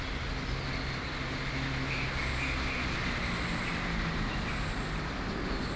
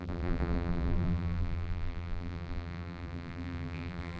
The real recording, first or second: first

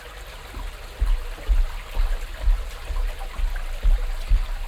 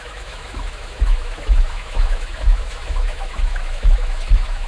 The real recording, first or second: first